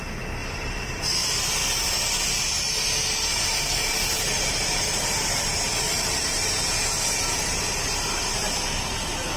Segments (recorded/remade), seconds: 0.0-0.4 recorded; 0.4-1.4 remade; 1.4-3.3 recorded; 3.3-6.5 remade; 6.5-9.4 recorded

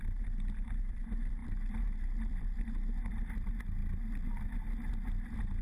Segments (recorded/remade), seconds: 0.0-3.8 remade; 3.8-4.9 recorded; 4.9-5.6 remade

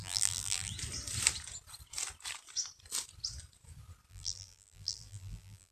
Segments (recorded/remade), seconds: 0.0-0.7 remade; 0.7-4.1 recorded; 4.1-5.7 remade

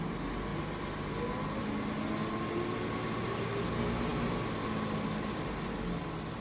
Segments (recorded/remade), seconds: 0.0-6.4 recorded